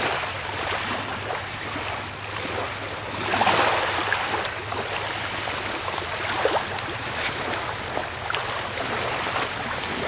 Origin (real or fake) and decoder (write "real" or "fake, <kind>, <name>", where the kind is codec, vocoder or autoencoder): real